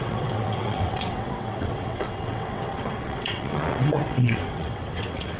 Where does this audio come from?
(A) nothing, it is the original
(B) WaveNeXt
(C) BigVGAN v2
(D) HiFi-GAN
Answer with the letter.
B